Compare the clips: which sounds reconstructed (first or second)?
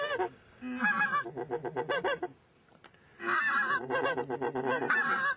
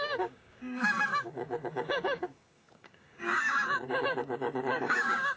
second